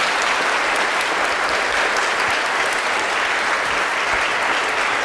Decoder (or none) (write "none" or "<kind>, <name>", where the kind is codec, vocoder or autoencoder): none